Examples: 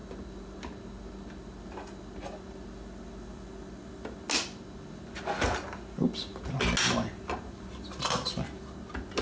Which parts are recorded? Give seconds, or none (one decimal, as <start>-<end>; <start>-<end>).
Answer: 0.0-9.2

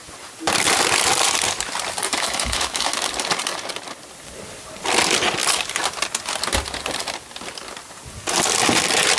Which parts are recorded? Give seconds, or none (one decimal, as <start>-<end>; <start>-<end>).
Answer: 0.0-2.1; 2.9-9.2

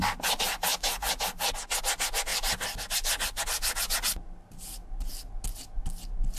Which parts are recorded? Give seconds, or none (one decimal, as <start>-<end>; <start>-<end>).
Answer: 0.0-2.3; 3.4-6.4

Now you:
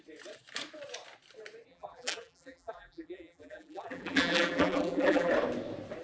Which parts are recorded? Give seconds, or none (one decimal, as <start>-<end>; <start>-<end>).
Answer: 0.0-1.7; 5.3-6.0

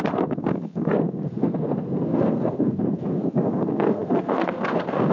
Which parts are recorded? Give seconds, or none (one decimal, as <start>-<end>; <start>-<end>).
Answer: none